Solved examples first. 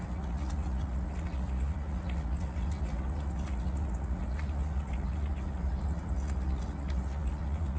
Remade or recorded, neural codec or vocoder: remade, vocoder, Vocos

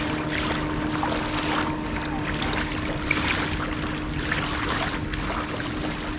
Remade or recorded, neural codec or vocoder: recorded